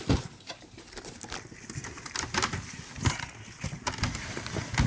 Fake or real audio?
real